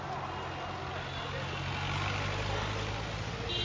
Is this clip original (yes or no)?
yes